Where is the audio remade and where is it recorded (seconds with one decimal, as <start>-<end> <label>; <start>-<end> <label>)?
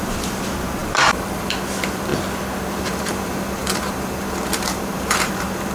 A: 0.0-2.1 remade; 2.1-2.8 recorded; 2.8-5.7 remade